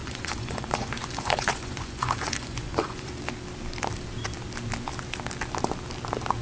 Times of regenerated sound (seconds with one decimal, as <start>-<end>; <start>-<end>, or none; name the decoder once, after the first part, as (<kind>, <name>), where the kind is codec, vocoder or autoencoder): 0.0-3.1 (vocoder, Vocos)